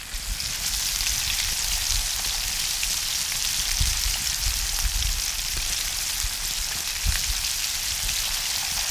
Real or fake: real